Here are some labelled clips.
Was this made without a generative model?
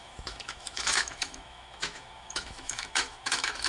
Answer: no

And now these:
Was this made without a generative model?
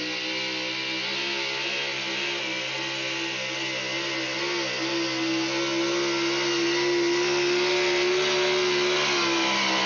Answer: yes